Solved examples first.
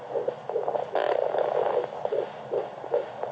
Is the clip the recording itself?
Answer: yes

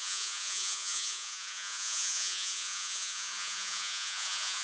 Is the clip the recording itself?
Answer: no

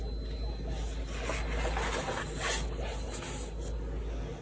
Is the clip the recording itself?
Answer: yes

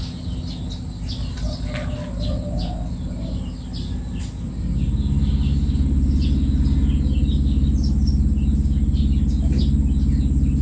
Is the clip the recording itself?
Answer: yes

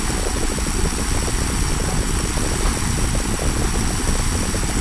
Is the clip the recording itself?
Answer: yes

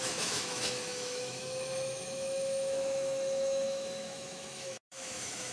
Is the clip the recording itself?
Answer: no